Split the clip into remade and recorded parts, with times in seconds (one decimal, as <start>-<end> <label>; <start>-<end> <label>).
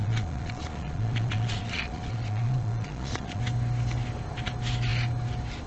0.0-3.4 remade; 3.4-5.7 recorded